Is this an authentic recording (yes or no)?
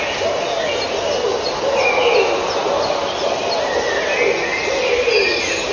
yes